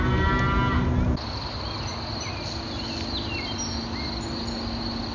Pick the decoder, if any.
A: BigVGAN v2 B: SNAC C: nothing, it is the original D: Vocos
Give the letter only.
C